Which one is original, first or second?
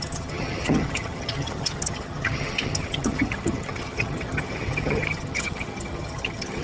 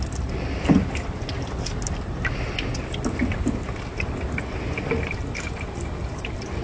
second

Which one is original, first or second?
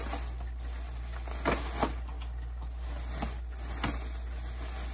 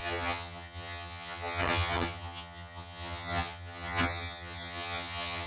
first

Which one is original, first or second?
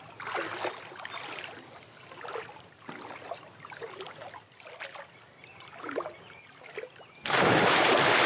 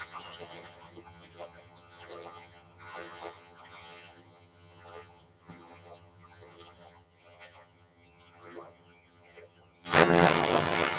first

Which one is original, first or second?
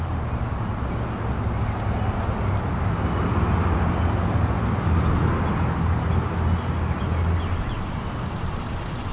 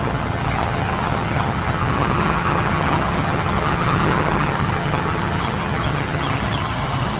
first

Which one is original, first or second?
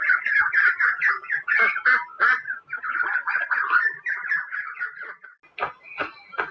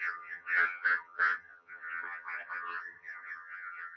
first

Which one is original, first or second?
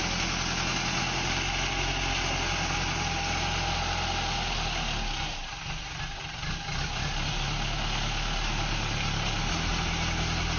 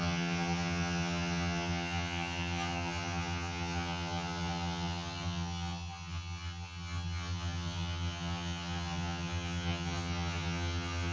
first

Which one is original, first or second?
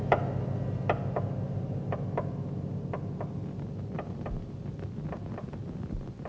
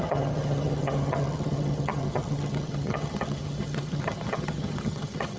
first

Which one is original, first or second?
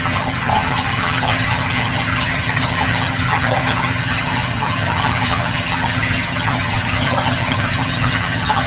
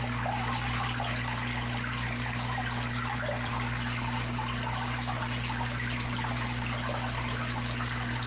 second